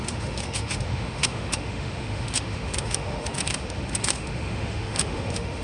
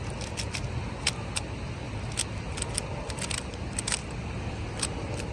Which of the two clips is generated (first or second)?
first